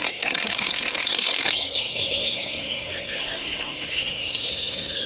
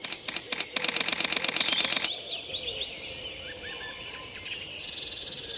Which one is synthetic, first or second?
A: first